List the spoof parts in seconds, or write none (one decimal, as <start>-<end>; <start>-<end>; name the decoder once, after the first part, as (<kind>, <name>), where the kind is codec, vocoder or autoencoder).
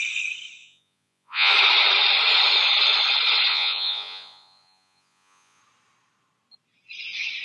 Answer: 0.6-1.5 (vocoder, Vocos); 3.5-5.6